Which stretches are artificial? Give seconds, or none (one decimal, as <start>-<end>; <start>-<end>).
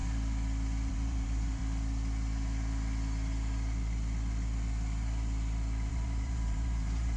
0.9-1.6; 5.9-7.2